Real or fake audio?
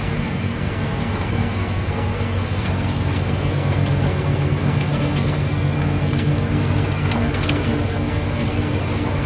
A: fake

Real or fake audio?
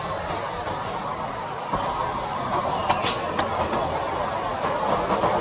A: real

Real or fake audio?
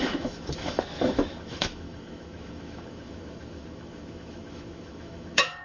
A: fake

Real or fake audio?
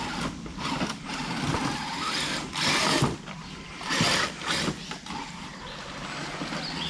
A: real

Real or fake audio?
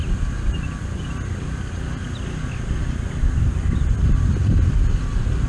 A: real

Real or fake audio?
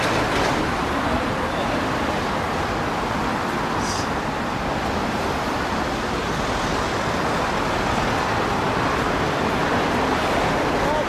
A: real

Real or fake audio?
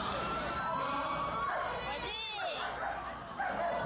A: fake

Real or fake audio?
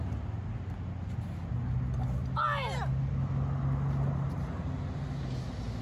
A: real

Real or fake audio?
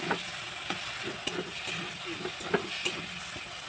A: real